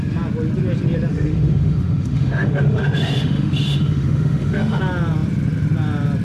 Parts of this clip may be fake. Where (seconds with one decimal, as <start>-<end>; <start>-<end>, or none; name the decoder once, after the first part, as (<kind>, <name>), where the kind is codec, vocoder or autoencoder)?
1.1-4.8 (autoencoder, DAC-VAE)